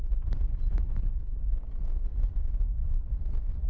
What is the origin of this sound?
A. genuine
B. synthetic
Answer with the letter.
A